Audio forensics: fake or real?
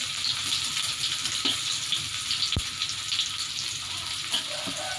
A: real